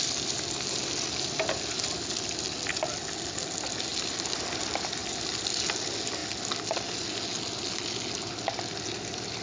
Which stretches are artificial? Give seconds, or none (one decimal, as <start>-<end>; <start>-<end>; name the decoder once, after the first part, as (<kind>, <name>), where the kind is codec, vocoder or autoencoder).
none